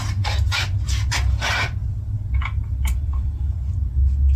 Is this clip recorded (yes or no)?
yes